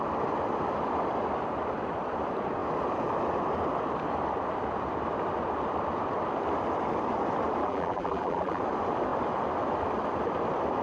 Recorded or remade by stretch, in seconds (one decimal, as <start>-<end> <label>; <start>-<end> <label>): 0.0-7.6 recorded; 7.6-8.6 remade; 8.6-10.8 recorded